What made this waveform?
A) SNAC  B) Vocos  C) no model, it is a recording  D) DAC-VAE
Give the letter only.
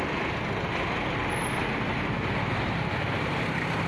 C